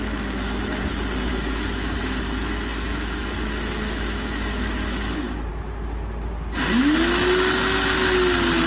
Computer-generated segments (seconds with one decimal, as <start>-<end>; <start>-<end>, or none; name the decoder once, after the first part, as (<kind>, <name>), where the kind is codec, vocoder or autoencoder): 1.3-5.5 (autoencoder, DAC-VAE)